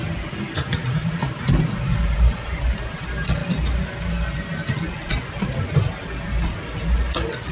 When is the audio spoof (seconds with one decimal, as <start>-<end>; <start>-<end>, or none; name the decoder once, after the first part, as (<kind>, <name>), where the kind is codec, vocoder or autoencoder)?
none